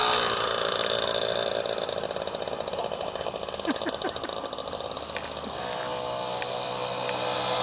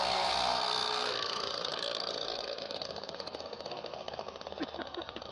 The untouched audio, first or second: first